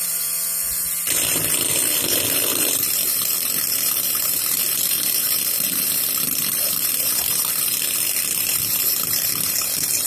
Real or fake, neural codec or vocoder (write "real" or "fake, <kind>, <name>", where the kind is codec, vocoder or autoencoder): fake, vocoder, BigVGAN v2